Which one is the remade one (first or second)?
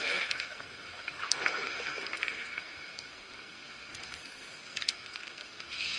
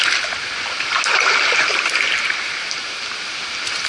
first